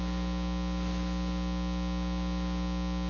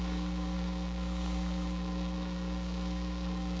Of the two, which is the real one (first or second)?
first